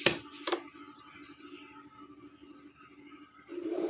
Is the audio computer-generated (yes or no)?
no